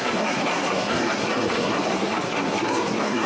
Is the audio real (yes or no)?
no